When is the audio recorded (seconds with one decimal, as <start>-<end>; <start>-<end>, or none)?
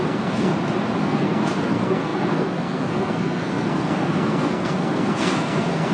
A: 0.5-1.0